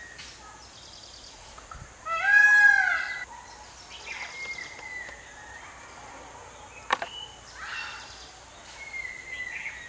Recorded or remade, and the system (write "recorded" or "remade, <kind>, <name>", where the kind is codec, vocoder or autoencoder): recorded